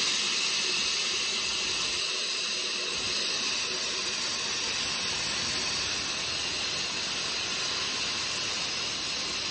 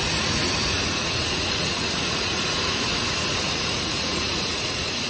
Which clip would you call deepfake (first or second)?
second